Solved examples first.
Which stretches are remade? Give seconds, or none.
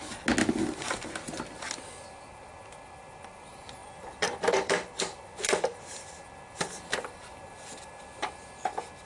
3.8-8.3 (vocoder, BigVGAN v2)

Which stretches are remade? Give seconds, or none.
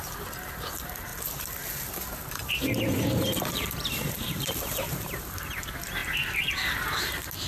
0.0-1.1 (vocoder, BigVGAN v2); 2.1-7.5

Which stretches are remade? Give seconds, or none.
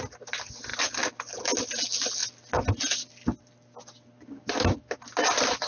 none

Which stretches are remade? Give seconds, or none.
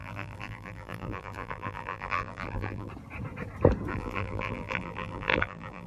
0.0-2.9 (vocoder, BigVGAN v2); 3.9-5.9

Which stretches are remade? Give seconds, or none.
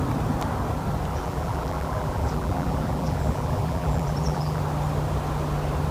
1.1-4.6 (vocoder, BigVGAN v2)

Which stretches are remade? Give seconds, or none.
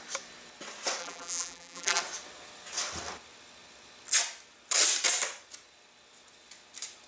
1.0-2.0 (vocoder, BigVGAN v2)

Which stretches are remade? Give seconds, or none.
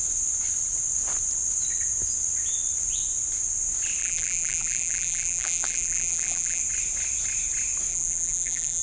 4.0-6.6 (vocoder, BigVGAN v2); 7.9-8.8